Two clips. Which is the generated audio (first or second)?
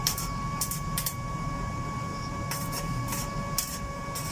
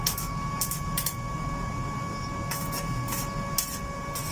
first